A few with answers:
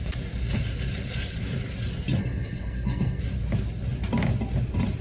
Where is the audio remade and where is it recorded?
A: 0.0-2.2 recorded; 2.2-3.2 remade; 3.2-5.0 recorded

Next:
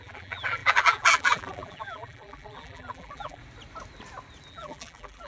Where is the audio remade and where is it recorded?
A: 0.0-3.4 remade; 3.4-4.5 recorded; 4.5-5.3 remade

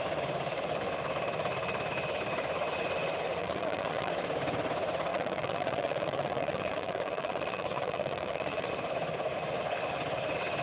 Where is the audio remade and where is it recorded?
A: 0.0-3.4 recorded; 3.4-4.1 remade; 4.1-5.1 recorded; 5.1-8.7 remade; 8.7-10.6 recorded